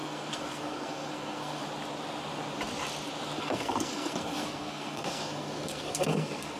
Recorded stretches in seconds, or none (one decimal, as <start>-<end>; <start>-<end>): 1.6-3.4